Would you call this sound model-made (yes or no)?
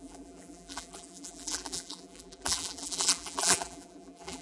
yes